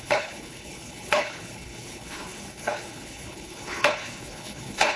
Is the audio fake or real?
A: fake